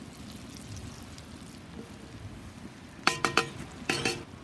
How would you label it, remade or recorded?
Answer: recorded